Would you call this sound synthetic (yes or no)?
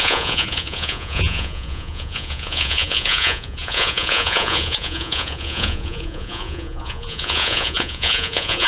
yes